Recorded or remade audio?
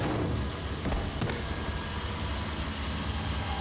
recorded